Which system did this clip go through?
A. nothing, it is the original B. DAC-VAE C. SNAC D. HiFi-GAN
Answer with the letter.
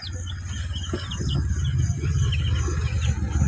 A